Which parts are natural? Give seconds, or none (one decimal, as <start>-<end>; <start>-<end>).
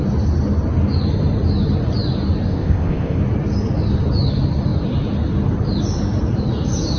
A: 0.0-2.5; 3.2-7.0